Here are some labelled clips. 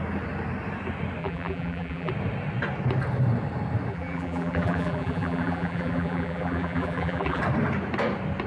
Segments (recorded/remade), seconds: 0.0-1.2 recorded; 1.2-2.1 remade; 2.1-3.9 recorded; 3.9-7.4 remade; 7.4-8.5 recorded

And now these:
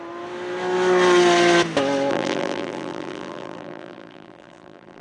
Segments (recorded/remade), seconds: 0.0-2.1 recorded; 2.1-5.0 remade

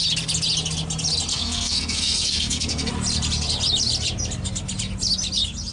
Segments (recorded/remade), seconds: 0.0-1.3 recorded; 1.3-2.9 remade; 2.9-5.7 recorded

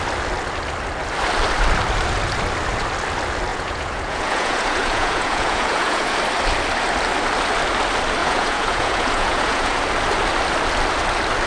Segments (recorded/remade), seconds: 0.0-3.5 recorded; 3.5-6.2 remade; 6.2-8.2 recorded; 8.2-9.8 remade; 9.8-11.5 recorded

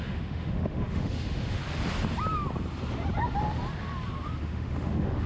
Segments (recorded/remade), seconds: 0.0-1.6 remade; 1.6-4.4 recorded; 4.4-5.3 remade